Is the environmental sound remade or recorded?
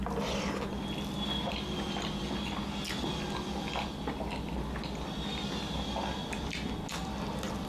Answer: recorded